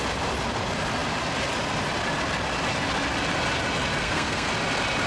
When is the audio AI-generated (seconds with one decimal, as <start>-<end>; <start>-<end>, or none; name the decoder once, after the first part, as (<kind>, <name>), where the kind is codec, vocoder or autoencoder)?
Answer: 4.0-4.5 (codec, SNAC)